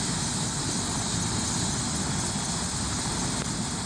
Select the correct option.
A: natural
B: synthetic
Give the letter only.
A